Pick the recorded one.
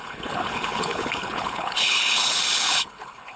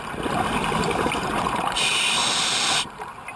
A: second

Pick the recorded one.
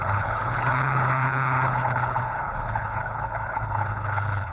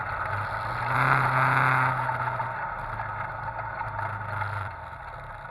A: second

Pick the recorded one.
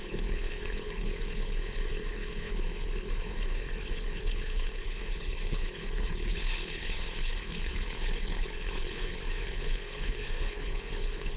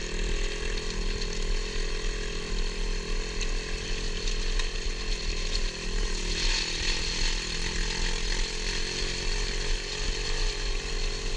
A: second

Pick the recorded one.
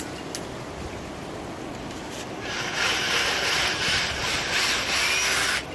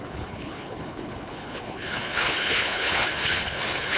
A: first